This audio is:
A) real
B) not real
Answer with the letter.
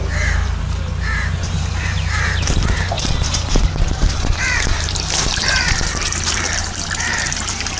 B